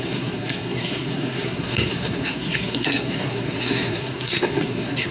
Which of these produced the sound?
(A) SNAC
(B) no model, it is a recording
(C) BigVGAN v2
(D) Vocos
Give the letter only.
A